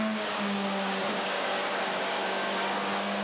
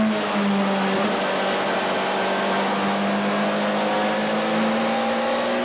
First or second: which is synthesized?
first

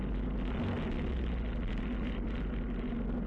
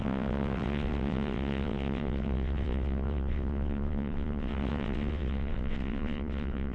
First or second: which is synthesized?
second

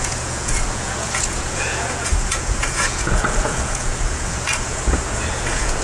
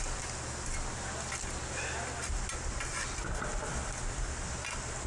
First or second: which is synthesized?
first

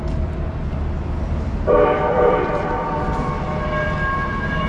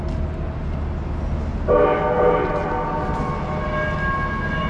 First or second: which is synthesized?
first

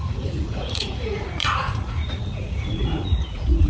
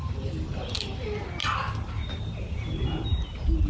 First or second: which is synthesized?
first